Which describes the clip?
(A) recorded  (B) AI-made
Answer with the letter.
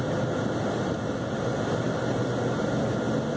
A